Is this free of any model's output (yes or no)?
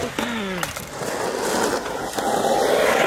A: yes